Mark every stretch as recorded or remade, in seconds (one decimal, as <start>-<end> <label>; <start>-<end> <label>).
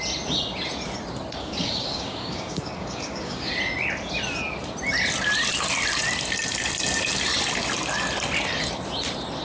0.0-1.4 recorded; 1.4-3.5 remade; 3.5-9.4 recorded